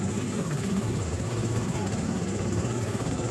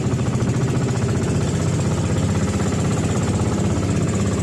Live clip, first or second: second